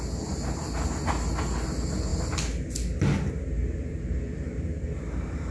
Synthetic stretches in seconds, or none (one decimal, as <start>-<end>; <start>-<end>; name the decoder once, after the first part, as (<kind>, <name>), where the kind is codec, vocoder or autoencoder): none